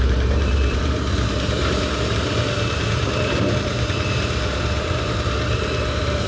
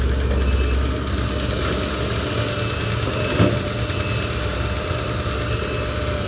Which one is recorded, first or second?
second